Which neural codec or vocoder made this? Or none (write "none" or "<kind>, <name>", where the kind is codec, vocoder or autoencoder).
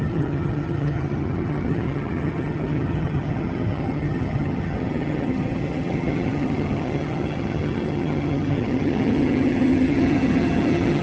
vocoder, HiFi-GAN